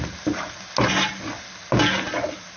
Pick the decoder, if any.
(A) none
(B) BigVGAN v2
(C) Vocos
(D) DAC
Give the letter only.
A